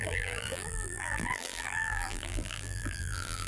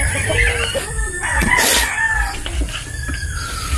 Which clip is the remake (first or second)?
first